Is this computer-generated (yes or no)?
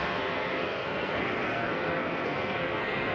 yes